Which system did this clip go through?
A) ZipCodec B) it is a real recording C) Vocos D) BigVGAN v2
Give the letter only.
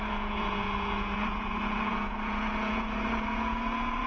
C